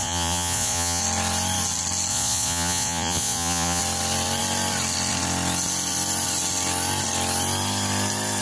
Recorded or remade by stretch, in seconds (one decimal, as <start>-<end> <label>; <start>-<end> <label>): 0.0-1.0 remade; 1.0-2.1 recorded; 2.1-3.8 remade; 3.8-8.4 recorded